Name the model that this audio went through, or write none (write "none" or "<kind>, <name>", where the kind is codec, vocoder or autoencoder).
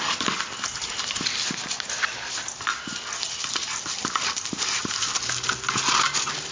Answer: none